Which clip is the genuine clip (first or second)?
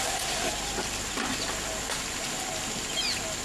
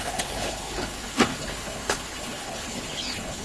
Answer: first